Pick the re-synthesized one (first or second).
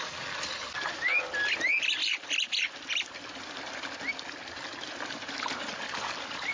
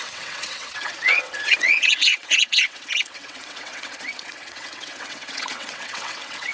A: second